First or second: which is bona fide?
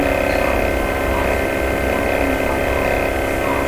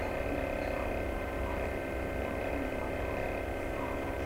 first